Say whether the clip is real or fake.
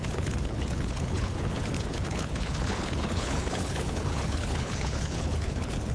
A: fake